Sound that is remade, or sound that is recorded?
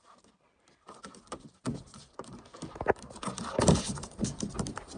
remade